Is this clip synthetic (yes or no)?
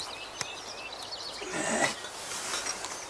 no